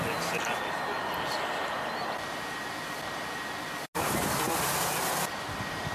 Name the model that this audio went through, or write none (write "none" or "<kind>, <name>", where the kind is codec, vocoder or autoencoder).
none